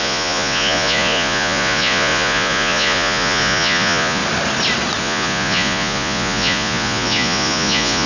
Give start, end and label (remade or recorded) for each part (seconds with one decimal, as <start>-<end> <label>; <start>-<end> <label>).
0.0-4.2 remade; 4.2-5.0 recorded; 5.0-8.1 remade